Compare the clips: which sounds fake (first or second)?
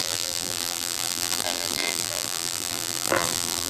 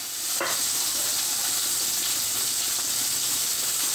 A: first